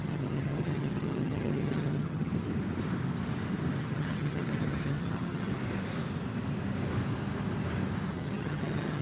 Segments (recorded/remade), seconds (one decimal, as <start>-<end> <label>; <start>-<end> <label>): 0.0-2.3 remade; 2.3-3.8 recorded; 3.8-5.5 remade; 5.5-8.1 recorded; 8.1-9.0 remade